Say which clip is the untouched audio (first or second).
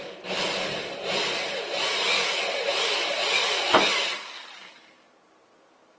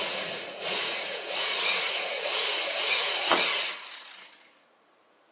first